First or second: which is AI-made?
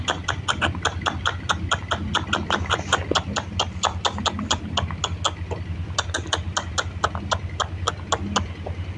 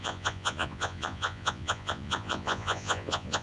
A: second